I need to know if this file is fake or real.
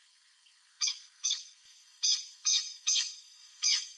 fake